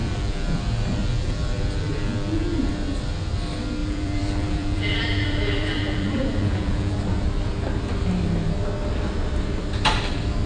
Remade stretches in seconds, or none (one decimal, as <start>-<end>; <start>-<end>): 0.0-0.6; 1.0-2.7; 3.8-7.0